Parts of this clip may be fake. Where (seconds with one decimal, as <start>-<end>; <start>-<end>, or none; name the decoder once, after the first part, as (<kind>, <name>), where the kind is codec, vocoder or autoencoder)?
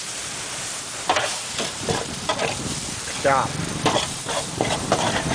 0.0-2.3 (vocoder, BigVGAN v2); 3.6-5.3